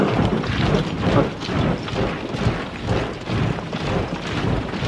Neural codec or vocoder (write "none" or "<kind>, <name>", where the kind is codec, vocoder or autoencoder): none